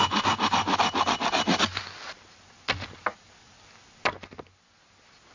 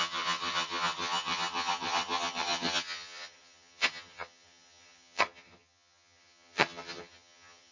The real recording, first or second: first